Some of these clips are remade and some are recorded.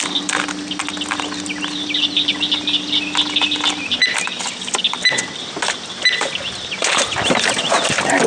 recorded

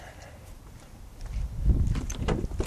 remade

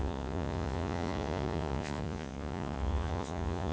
remade